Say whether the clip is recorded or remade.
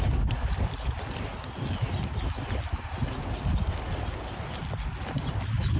recorded